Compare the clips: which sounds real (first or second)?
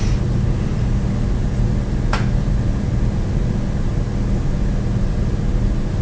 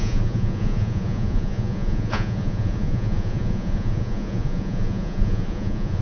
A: first